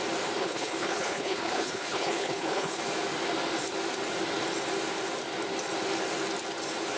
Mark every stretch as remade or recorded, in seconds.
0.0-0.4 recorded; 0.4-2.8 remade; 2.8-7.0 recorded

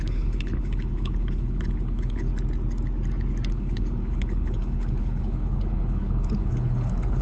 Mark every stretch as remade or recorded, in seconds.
0.0-2.3 remade; 2.3-3.5 recorded; 3.5-7.2 remade

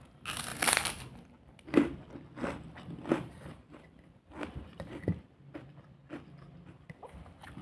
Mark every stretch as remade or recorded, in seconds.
0.0-7.6 recorded

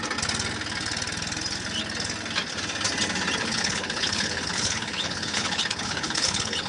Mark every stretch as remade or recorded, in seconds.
0.0-3.4 recorded; 3.4-6.7 remade

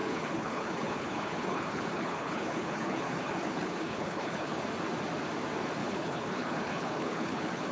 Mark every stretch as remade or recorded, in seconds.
0.0-4.6 remade; 4.6-5.8 recorded; 5.8-7.7 remade

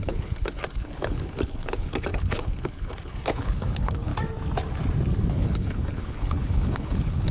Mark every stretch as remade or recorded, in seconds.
0.0-4.1 remade; 4.1-5.3 recorded; 5.3-7.3 remade

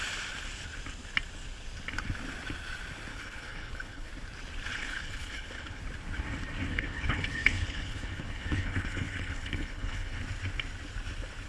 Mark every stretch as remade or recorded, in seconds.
0.0-3.1 recorded; 3.1-4.1 remade; 4.1-4.7 recorded; 4.7-5.8 remade; 5.8-6.7 recorded; 6.7-10.2 remade; 10.2-11.5 recorded